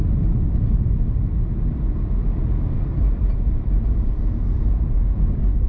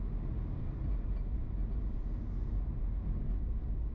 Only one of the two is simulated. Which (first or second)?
first